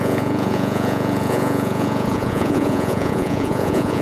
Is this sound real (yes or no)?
no